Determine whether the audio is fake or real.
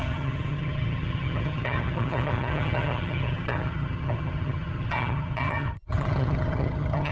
fake